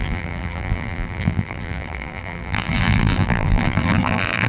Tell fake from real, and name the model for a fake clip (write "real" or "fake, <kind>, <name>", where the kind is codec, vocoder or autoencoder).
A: fake, vocoder, BigVGAN v2